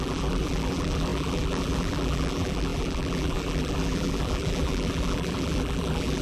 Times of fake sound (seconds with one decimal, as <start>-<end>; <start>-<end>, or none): 0.0-6.2